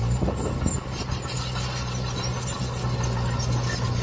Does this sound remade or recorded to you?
recorded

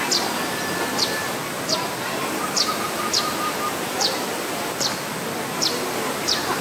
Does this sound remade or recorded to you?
recorded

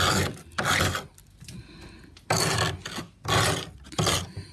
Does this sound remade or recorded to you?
recorded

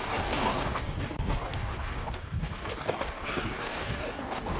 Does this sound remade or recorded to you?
remade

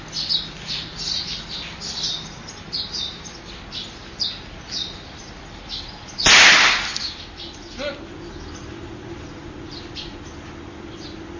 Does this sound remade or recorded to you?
recorded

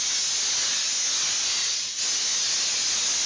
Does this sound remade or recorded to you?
recorded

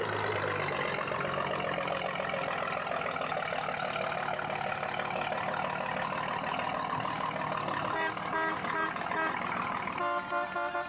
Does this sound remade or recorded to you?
recorded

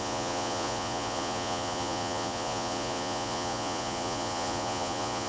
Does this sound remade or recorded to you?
remade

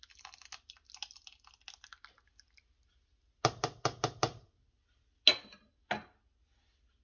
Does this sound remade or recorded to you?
recorded